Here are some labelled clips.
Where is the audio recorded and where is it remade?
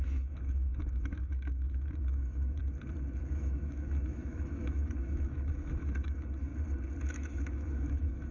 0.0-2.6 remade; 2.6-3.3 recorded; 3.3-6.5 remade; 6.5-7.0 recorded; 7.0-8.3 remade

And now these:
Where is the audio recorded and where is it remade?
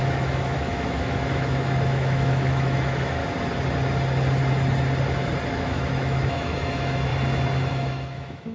0.0-3.2 remade; 3.2-5.5 recorded; 5.5-7.1 remade; 7.1-7.7 recorded; 7.7-8.5 remade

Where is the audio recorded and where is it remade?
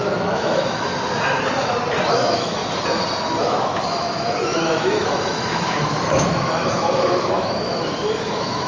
0.0-0.9 remade; 0.9-2.1 recorded; 2.1-2.6 remade; 2.6-3.4 recorded; 3.4-8.7 remade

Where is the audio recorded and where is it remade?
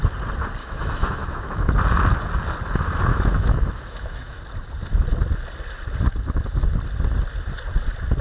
0.0-0.6 recorded; 0.6-1.7 remade; 1.7-3.1 recorded; 3.1-4.4 remade; 4.4-8.2 recorded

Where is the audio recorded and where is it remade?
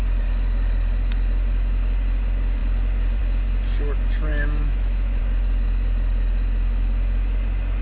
0.0-4.3 recorded; 4.3-5.2 remade; 5.2-7.8 recorded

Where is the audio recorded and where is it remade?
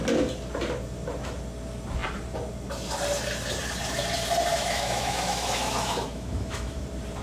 0.0-4.5 recorded; 4.5-6.8 remade; 6.8-7.2 recorded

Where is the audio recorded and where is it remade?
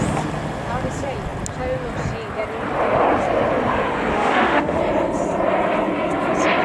0.0-4.1 recorded; 4.1-4.8 remade; 4.8-6.6 recorded